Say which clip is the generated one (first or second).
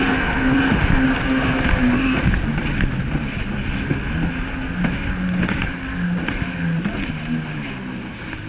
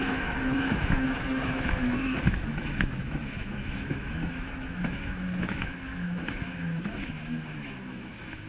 second